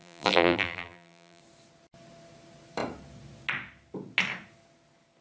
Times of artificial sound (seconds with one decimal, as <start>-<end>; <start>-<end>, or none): 0.0-1.4